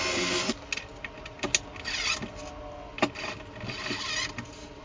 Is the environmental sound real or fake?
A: real